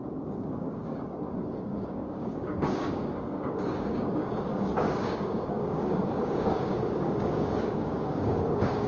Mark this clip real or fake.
fake